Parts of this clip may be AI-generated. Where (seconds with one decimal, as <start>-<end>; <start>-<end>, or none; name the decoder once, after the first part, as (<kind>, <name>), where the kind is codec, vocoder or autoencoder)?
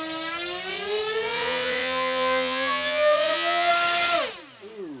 0.7-3.7 (vocoder, Vocos)